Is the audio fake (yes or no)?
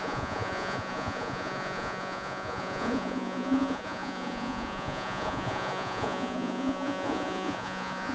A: yes